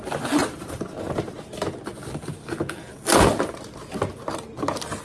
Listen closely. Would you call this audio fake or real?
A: real